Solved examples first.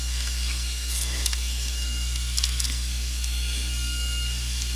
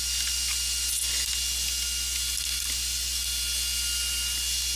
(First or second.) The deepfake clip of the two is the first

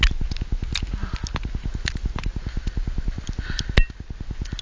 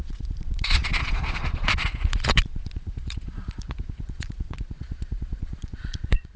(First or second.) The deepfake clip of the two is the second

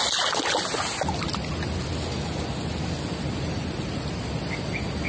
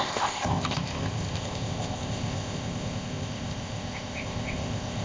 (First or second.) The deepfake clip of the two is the second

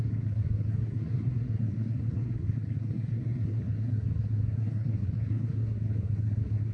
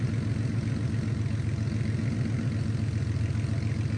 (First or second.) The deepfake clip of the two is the first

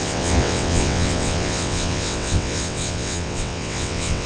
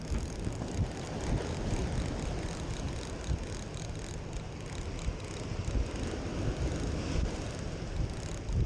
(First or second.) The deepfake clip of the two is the first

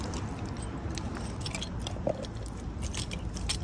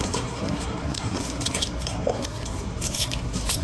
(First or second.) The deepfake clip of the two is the second